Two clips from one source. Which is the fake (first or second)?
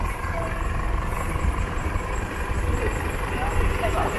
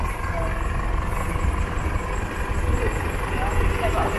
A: first